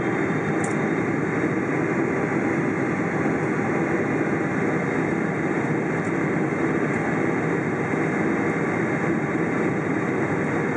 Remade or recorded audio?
recorded